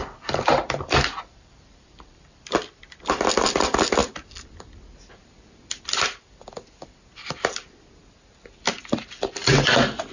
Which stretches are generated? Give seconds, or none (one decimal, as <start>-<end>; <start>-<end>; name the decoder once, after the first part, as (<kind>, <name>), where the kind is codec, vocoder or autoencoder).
0.0-4.0 (vocoder, BigVGAN v2); 8.8-10.1